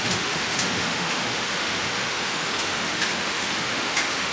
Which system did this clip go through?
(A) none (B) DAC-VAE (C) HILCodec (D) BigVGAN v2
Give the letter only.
B